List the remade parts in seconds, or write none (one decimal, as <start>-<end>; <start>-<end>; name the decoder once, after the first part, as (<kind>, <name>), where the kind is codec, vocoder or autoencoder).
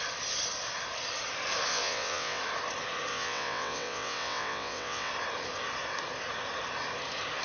1.7-2.4 (vocoder, WaveNeXt); 3.1-5.1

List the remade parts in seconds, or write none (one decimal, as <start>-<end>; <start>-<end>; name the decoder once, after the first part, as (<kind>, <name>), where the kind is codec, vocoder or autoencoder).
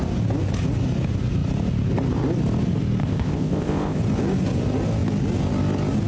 3.0-4.0 (codec, ZipCodec)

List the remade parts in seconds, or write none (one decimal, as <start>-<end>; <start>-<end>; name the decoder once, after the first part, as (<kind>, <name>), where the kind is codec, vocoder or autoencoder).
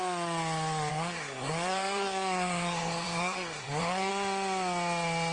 0.9-4.1 (codec, SNAC)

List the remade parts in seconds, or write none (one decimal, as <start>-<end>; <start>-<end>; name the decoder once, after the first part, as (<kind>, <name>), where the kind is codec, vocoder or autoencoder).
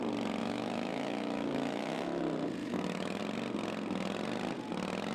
0.4-2.2 (autoencoder, DAC-VAE); 2.6-3.2